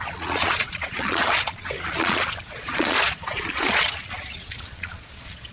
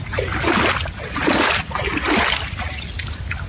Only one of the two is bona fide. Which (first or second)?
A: second